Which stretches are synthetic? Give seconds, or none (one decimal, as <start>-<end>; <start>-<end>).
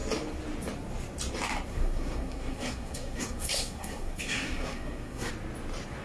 1.7-5.3